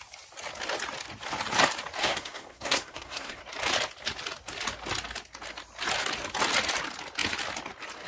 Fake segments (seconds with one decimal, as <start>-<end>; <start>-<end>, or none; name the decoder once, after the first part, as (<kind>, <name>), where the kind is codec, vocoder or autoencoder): 2.0-3.4 (codec, SNAC)